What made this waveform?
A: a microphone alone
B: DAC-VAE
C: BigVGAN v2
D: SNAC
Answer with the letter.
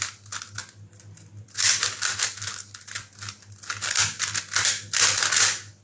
A